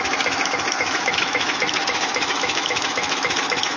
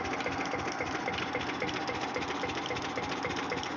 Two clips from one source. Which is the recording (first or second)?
second